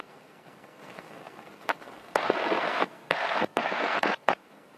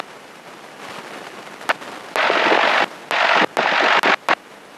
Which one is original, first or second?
second